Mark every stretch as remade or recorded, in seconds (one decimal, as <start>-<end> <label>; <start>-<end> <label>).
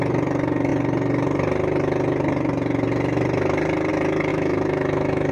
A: 0.0-4.3 recorded; 4.3-5.3 remade